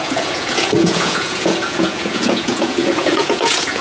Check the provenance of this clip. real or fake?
fake